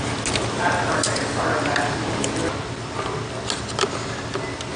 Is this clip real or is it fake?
real